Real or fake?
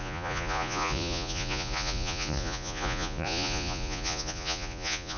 fake